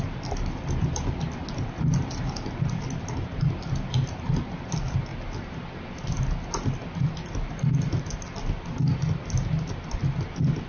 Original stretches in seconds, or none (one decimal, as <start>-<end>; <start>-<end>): 0.0-10.7